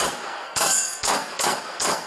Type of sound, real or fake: fake